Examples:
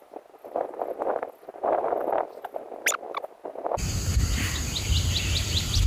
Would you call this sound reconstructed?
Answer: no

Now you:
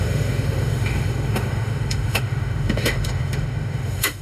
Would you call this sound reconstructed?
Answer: yes